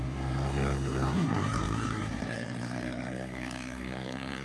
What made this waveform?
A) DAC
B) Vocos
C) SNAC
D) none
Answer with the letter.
C